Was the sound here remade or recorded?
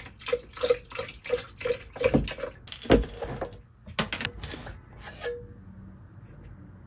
recorded